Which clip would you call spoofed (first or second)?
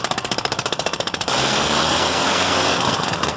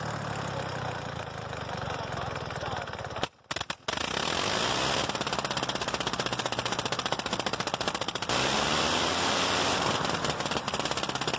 first